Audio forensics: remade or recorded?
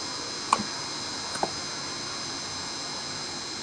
remade